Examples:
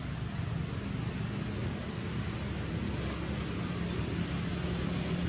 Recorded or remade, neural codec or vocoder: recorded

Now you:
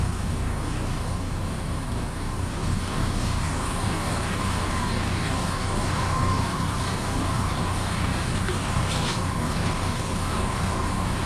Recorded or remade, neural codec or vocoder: remade, codec, DAC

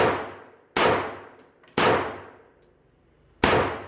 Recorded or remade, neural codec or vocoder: recorded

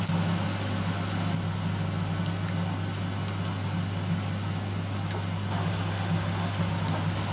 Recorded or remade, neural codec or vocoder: recorded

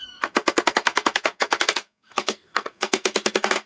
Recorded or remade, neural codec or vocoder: remade, codec, SNAC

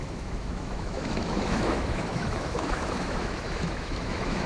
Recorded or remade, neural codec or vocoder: remade, autoencoder, DAC-VAE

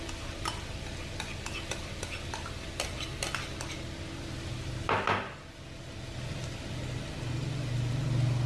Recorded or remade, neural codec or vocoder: recorded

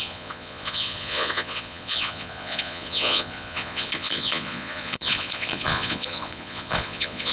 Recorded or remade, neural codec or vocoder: remade, vocoder, Vocos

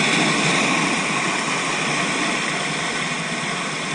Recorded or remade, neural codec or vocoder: recorded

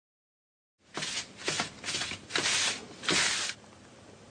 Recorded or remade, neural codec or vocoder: recorded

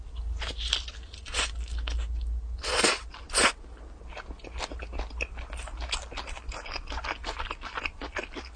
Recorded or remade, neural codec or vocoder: recorded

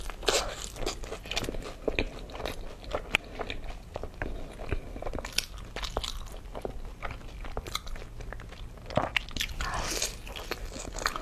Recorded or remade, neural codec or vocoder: recorded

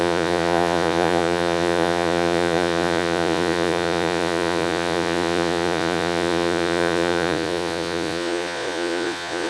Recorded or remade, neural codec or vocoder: remade, vocoder, Vocos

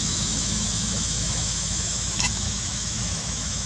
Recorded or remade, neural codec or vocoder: remade, autoencoder, DAC-VAE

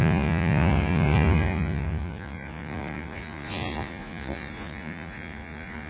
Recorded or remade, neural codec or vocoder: remade, vocoder, Vocos